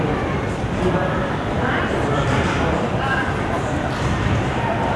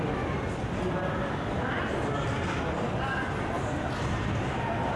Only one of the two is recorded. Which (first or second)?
second